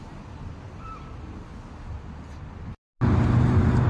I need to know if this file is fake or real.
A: real